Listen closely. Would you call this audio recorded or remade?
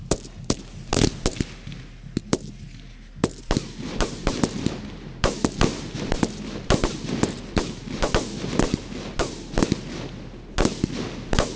recorded